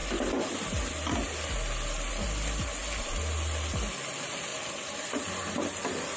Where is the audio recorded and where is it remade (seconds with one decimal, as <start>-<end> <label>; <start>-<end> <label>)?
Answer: 0.0-6.2 recorded